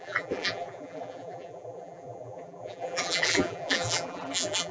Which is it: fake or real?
fake